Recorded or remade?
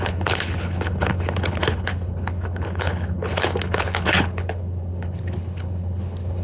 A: remade